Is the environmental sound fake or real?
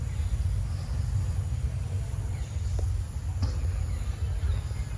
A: real